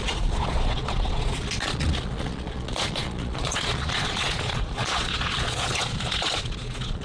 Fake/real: fake